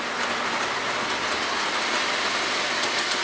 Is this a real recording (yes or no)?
yes